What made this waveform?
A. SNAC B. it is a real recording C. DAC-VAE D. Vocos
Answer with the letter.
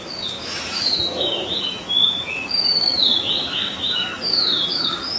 C